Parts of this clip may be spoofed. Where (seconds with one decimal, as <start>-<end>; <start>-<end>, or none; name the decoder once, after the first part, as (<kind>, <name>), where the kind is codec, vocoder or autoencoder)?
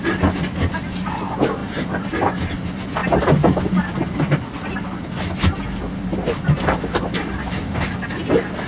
1.6-2.5 (vocoder, BigVGAN v2); 6.1-7.8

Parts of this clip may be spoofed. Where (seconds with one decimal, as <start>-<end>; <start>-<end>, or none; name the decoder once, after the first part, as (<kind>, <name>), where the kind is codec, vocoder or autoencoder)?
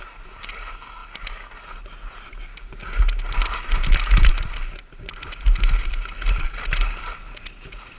none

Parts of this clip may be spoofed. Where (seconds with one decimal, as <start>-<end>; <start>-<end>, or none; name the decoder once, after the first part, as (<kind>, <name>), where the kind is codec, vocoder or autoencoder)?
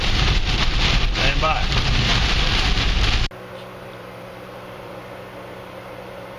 0.0-2.1 (vocoder, BigVGAN v2); 3.8-5.0; 5.6-6.4